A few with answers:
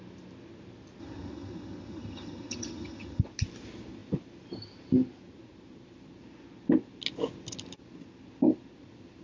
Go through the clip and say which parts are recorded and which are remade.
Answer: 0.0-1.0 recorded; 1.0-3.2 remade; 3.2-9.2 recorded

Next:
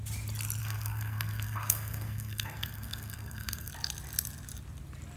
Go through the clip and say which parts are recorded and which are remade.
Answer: 0.0-0.6 recorded; 0.6-3.7 remade; 3.7-5.2 recorded

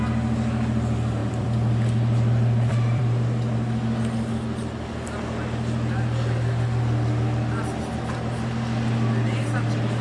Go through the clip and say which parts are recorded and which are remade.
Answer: 0.0-1.2 recorded; 1.2-3.0 remade; 3.0-10.0 recorded